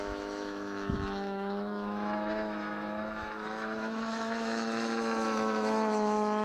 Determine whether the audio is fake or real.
fake